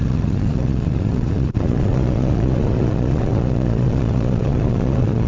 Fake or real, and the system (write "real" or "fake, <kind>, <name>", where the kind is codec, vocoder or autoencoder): fake, vocoder, Vocos